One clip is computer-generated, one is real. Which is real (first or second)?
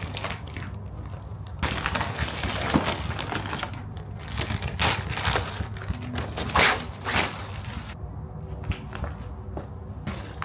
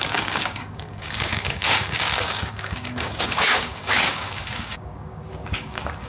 first